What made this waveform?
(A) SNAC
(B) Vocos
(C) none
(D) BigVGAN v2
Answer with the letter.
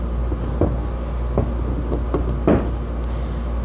C